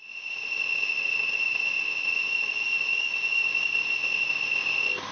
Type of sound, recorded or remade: recorded